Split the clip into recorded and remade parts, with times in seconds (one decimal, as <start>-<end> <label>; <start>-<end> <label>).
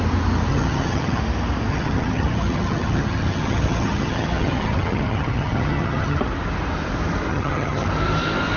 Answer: 0.0-0.5 recorded; 0.5-1.2 remade; 1.2-1.7 recorded; 1.7-6.2 remade; 6.2-7.3 recorded; 7.3-7.9 remade; 7.9-8.6 recorded